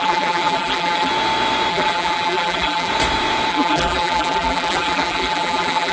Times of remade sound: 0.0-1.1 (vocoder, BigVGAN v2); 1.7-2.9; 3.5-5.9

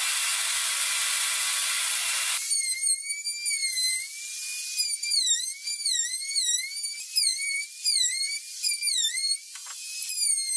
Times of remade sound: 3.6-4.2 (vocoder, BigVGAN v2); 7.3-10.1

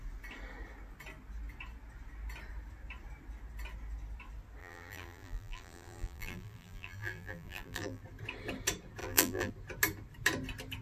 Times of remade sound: 4.6-8.0 (vocoder, BigVGAN v2); 9.0-9.5

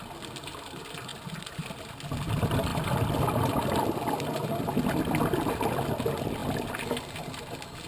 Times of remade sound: 1.1-1.7 (vocoder, BigVGAN v2)

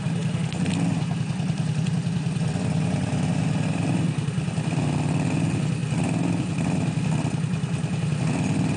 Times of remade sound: none

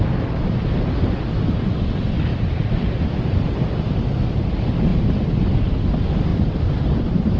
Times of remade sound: 2.3-3.9 (vocoder, BigVGAN v2); 6.3-7.4

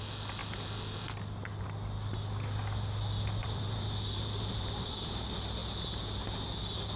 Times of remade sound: 3.4-4.9 (vocoder, BigVGAN v2)

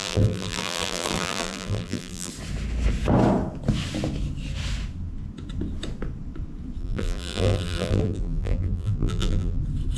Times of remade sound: 0.0-2.3 (vocoder, BigVGAN v2); 6.8-9.6